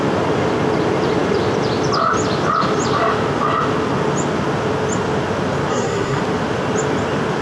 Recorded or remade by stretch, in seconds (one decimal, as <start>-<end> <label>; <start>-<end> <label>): 0.0-5.7 recorded; 5.7-6.2 remade; 6.2-7.4 recorded